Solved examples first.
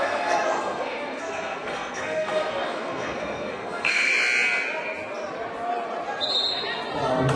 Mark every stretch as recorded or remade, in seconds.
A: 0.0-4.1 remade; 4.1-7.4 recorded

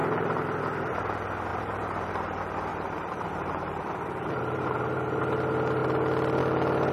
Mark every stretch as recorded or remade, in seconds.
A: 0.0-0.6 remade; 0.6-1.5 recorded; 1.5-2.1 remade; 2.1-2.7 recorded; 2.7-5.2 remade; 5.2-6.9 recorded

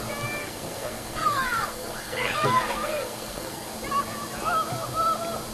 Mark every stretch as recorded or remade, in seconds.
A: 0.0-0.4 recorded; 0.4-3.7 remade; 3.7-5.5 recorded

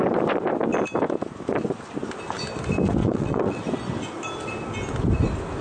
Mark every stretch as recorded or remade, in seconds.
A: 0.0-3.0 recorded; 3.0-3.6 remade; 3.6-5.6 recorded